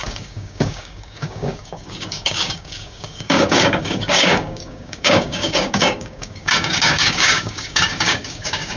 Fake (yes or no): yes